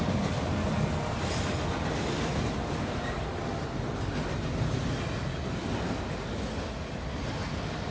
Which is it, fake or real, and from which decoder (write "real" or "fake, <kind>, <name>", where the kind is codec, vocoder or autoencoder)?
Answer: real